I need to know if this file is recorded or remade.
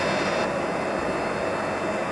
recorded